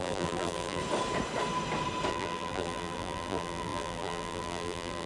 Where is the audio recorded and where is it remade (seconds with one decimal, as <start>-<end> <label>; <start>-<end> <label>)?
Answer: 0.0-0.8 remade; 0.8-2.1 recorded; 2.1-5.1 remade